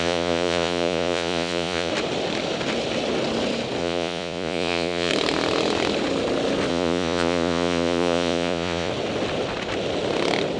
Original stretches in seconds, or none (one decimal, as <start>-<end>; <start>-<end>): 1.9-3.8; 5.1-6.7; 8.9-10.6